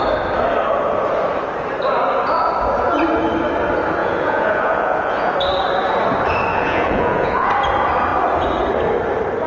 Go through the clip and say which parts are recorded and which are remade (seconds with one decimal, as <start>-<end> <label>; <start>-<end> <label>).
0.0-4.0 recorded; 4.0-5.3 remade; 5.3-6.5 recorded; 6.5-7.5 remade; 7.5-9.5 recorded